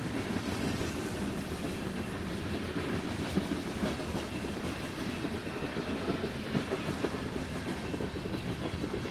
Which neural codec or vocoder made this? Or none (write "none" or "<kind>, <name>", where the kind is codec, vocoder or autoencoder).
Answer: vocoder, BigVGAN v2